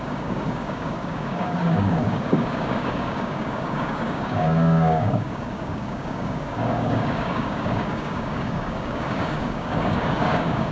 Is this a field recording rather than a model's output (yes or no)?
no